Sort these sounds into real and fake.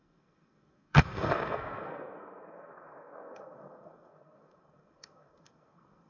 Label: fake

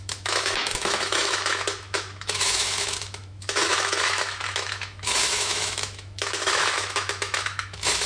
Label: fake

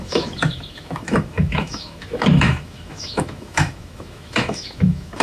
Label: fake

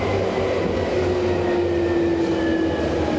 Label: real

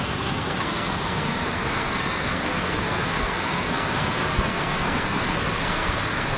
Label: fake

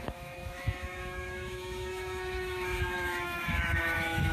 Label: fake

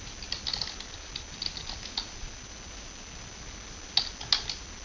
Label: real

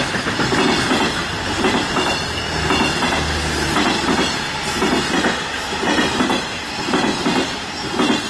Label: real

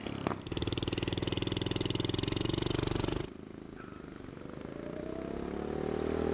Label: real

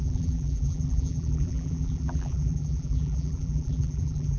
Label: fake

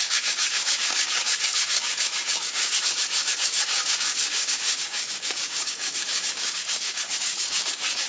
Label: fake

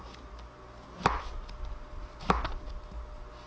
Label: real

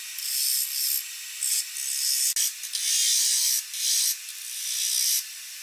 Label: real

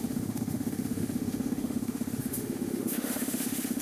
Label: fake